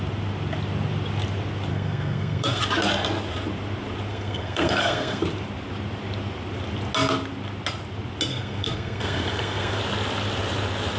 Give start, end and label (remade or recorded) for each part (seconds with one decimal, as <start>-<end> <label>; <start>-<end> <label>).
0.0-1.7 recorded; 1.7-2.6 remade; 2.6-4.1 recorded; 4.1-5.2 remade; 5.2-8.3 recorded; 8.3-9.8 remade; 9.8-11.0 recorded